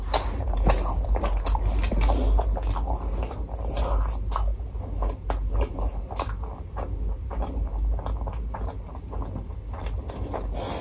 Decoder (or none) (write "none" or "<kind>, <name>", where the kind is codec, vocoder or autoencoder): none